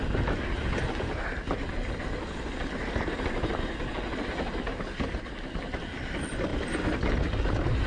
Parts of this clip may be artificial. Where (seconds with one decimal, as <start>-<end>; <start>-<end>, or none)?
4.7-5.8